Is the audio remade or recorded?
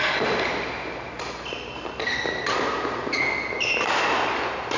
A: recorded